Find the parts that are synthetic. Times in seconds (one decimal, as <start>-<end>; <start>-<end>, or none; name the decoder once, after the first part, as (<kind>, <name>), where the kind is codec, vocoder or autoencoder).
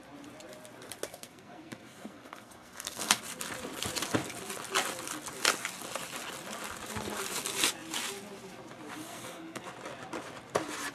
1.1-3.2 (codec, SNAC); 9.0-9.6